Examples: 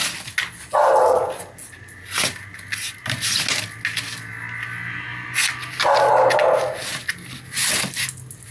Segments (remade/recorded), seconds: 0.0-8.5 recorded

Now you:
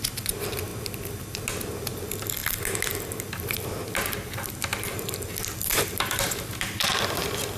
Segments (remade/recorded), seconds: 0.0-5.7 recorded; 5.7-7.6 remade

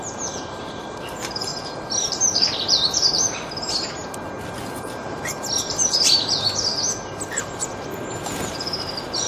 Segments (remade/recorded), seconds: 0.0-1.5 remade; 1.5-2.1 recorded; 2.1-4.0 remade; 4.0-5.6 recorded; 5.6-6.7 remade; 6.7-7.3 recorded; 7.3-7.9 remade; 7.9-8.5 recorded; 8.5-9.3 remade

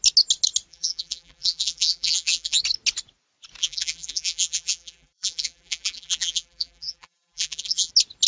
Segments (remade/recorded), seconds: 0.0-0.7 recorded; 0.7-2.6 remade; 2.6-3.6 recorded; 3.6-7.9 remade; 7.9-8.3 recorded

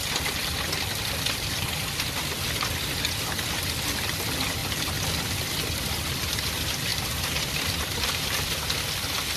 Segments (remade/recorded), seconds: 0.0-6.9 recorded; 6.9-8.5 remade; 8.5-9.4 recorded